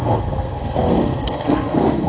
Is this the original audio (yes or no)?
no